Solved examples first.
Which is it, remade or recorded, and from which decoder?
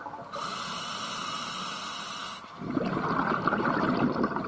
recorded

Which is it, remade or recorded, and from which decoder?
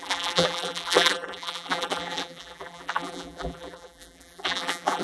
remade, vocoder, BigVGAN v2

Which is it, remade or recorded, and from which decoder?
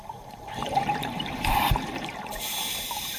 remade, vocoder, BigVGAN v2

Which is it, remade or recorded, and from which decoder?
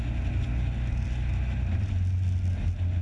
recorded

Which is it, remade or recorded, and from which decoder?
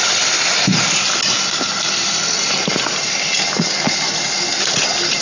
recorded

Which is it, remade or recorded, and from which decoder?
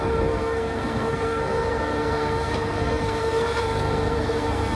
remade, codec, SNAC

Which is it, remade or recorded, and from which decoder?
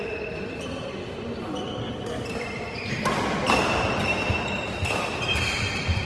recorded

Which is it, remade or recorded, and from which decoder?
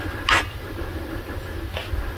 recorded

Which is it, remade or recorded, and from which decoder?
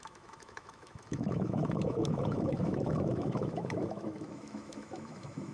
remade, autoencoder, DAC-VAE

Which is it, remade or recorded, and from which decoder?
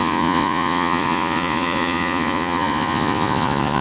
remade, vocoder, Vocos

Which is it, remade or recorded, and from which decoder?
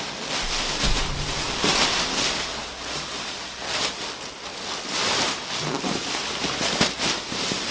recorded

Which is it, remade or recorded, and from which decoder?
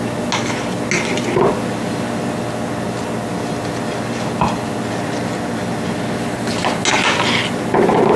recorded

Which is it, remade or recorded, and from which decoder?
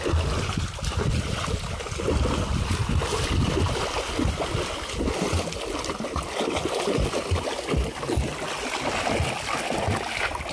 recorded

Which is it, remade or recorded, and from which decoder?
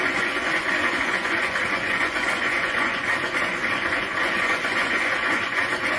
remade, vocoder, Vocos